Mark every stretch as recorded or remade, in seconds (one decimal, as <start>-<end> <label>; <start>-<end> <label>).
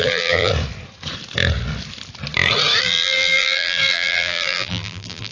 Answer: 0.0-0.5 remade; 0.5-2.8 recorded; 2.8-5.3 remade